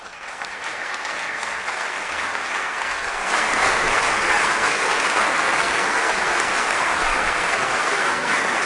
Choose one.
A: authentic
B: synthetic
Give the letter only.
B